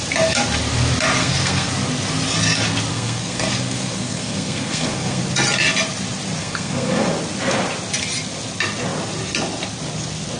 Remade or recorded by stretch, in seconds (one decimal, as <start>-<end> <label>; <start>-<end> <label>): 0.0-1.2 recorded; 1.2-1.7 remade; 1.7-2.9 recorded; 2.9-5.2 remade; 5.2-6.4 recorded; 6.4-7.2 remade; 7.2-10.4 recorded